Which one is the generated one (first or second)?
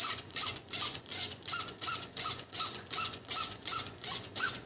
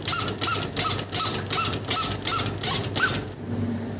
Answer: first